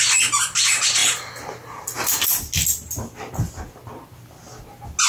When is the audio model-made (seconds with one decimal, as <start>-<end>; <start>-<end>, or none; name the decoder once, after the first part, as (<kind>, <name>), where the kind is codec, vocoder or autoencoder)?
none